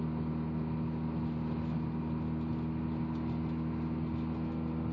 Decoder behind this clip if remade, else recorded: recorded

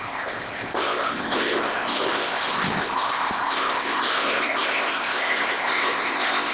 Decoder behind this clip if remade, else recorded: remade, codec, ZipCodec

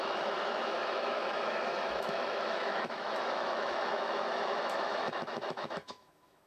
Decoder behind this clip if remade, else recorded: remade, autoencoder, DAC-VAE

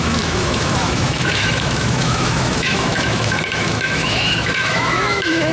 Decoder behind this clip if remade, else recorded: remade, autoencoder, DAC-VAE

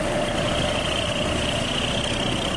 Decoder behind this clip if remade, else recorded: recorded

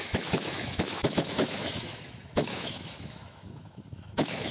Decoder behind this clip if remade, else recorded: remade, autoencoder, DAC-VAE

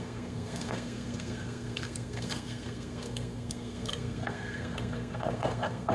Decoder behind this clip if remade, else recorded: remade, codec, SNAC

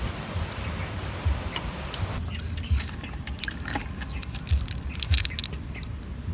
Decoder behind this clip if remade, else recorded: recorded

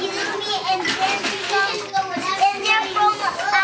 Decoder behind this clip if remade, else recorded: recorded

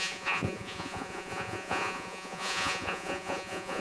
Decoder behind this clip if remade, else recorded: remade, vocoder, Vocos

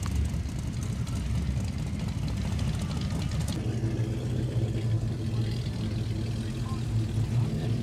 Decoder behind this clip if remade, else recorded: recorded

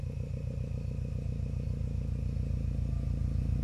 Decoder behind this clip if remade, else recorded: recorded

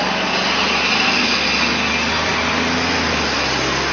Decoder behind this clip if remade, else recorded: recorded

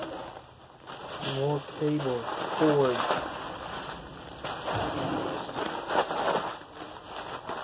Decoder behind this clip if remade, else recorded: recorded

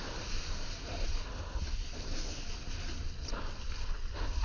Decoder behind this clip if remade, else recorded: recorded